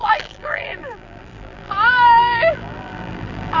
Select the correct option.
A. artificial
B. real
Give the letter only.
A